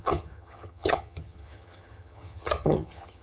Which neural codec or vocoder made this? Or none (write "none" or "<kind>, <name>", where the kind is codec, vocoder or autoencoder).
vocoder, HiFi-GAN